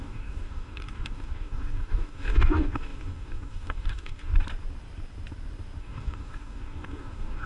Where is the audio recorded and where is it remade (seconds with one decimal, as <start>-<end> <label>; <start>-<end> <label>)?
0.0-4.3 remade; 4.3-5.8 recorded; 5.8-7.5 remade